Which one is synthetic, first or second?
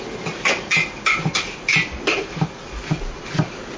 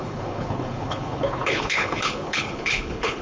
second